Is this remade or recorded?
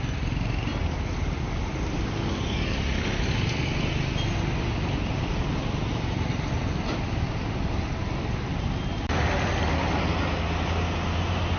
recorded